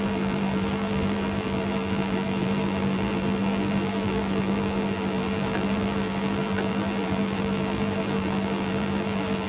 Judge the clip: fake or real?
fake